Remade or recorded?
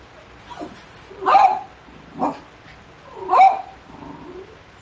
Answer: recorded